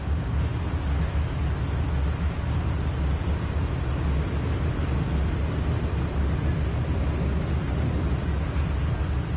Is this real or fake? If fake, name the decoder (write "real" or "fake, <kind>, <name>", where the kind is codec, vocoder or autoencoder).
real